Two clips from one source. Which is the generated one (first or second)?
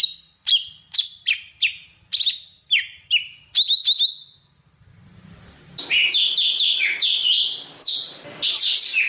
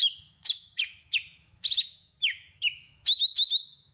second